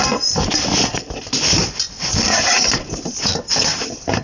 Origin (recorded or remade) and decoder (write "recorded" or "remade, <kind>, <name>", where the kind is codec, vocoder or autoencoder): recorded